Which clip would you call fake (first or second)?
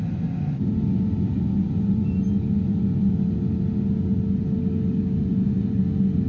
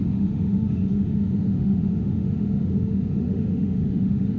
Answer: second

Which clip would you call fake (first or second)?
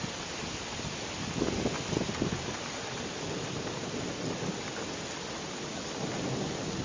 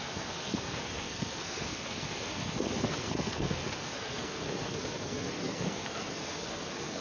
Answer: second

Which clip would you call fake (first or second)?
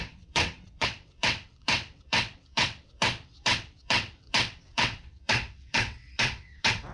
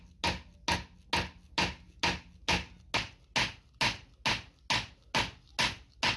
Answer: first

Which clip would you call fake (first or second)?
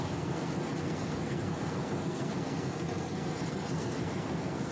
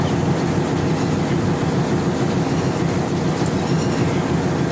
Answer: first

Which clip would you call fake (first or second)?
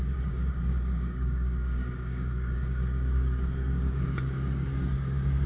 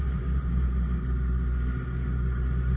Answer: first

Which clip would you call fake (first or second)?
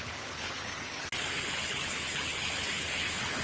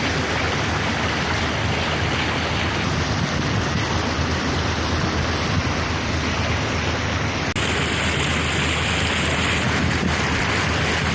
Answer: first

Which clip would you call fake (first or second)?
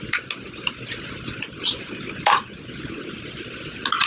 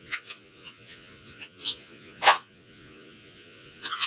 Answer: second